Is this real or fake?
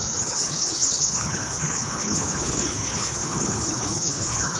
fake